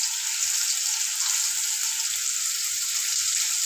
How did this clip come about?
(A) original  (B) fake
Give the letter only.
A